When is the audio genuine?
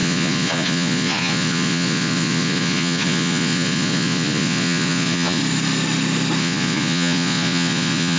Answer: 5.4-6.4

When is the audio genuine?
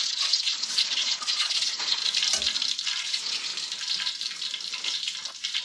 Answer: 2.0-3.0; 3.5-5.6